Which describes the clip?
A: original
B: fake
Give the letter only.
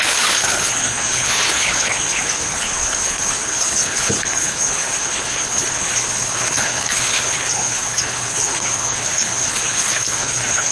B